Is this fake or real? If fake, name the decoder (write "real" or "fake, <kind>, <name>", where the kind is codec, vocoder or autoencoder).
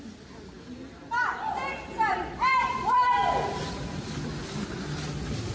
real